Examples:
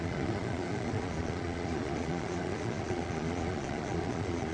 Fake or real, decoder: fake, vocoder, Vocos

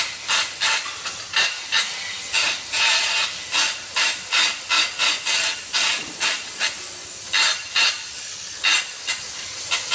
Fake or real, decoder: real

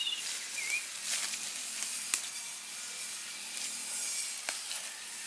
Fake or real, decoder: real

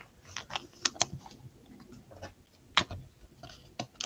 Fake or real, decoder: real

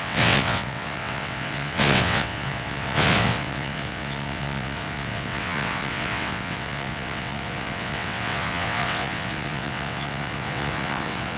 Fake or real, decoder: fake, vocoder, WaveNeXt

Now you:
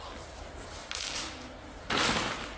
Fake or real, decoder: real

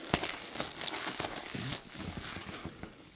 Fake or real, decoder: fake, codec, DAC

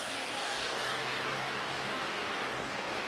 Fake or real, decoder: fake, codec, DAC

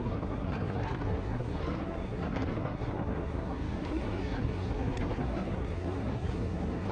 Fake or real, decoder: fake, codec, SNAC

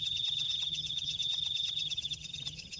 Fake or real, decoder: fake, vocoder, HiFi-GAN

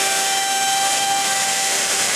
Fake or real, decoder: fake, autoencoder, DAC-VAE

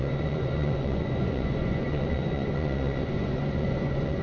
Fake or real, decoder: fake, vocoder, Vocos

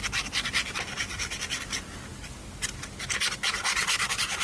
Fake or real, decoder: real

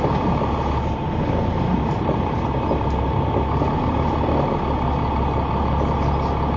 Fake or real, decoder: real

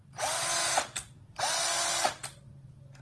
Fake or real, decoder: real